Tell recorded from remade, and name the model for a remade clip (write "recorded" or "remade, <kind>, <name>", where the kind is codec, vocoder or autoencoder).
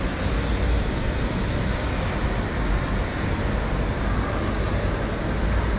recorded